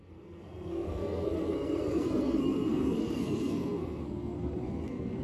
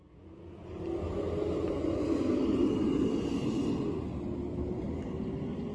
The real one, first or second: second